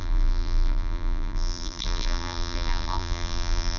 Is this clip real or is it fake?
fake